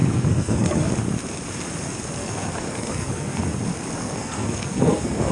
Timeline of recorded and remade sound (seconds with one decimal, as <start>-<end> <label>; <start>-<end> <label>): 0.0-0.9 remade; 0.9-2.2 recorded; 2.2-3.4 remade; 3.4-4.0 recorded; 4.0-5.3 remade